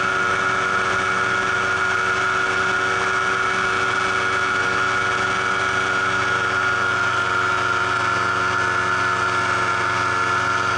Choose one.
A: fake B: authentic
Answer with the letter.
B